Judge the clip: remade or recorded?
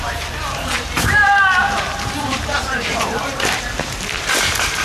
remade